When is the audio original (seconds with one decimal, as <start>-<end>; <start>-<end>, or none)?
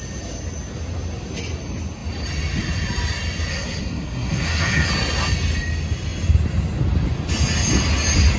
0.0-3.5; 4.9-8.4